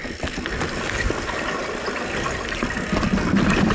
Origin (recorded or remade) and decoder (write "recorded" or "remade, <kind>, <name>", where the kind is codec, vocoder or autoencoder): recorded